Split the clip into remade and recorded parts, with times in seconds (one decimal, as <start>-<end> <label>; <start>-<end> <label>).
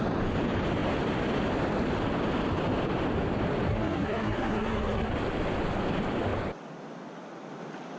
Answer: 0.0-3.7 recorded; 3.7-5.1 remade; 5.1-8.0 recorded